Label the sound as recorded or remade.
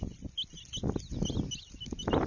recorded